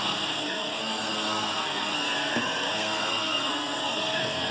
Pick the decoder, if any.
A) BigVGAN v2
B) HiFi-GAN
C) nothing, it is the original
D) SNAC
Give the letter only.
D